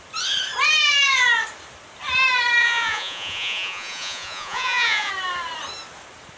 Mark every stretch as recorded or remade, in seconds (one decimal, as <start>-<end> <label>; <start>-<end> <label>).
0.0-2.6 recorded; 2.6-5.1 remade; 5.1-6.4 recorded

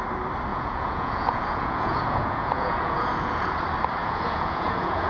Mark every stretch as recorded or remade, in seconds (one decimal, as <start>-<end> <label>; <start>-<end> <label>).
0.0-0.5 recorded; 0.5-3.6 remade; 3.6-4.0 recorded; 4.0-5.1 remade

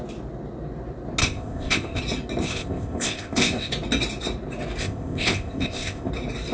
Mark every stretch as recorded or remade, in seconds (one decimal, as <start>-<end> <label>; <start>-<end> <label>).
0.0-1.2 recorded; 1.2-2.0 remade; 2.0-2.4 recorded; 2.4-3.7 remade; 3.7-4.8 recorded; 4.8-6.1 remade; 6.1-6.5 recorded